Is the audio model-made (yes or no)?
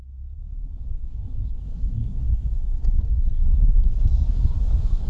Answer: yes